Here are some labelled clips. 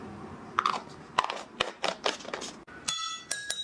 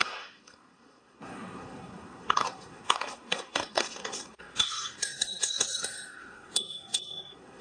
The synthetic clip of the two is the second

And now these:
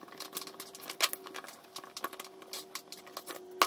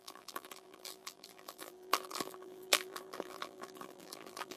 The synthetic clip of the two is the second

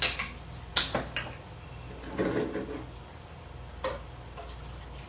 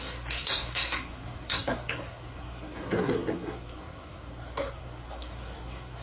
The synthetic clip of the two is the second